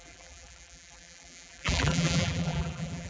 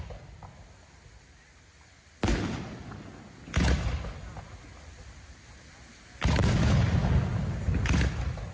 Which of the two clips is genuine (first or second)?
second